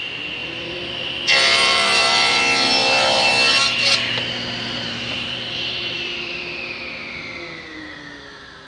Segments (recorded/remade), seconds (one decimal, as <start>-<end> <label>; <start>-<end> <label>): 0.0-0.4 recorded; 0.4-2.4 remade; 2.4-2.8 recorded; 2.8-3.3 remade; 3.3-4.6 recorded; 4.6-6.8 remade; 6.8-8.7 recorded